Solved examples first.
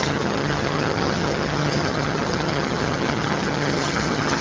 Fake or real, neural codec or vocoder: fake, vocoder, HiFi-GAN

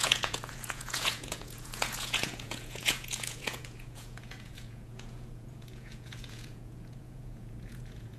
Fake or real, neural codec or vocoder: fake, vocoder, Vocos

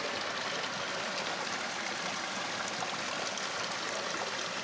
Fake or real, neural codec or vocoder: real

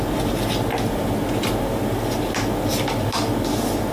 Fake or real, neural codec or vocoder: real